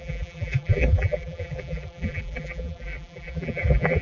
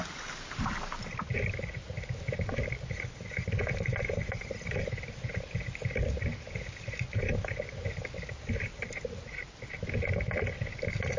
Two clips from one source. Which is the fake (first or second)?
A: first